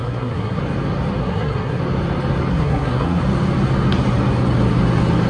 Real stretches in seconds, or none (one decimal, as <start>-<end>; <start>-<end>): 0.6-1.2; 1.8-2.5; 3.2-5.3